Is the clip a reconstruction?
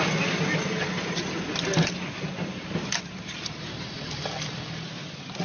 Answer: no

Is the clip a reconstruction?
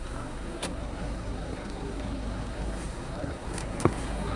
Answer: yes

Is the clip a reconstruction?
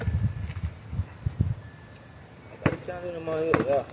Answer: no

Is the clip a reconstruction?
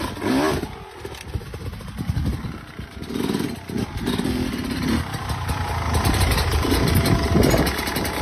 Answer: no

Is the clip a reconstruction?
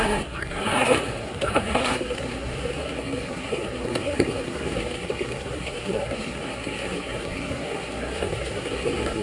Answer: yes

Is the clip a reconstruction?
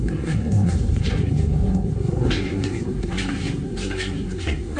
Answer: yes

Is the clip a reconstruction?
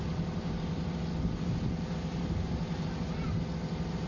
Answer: no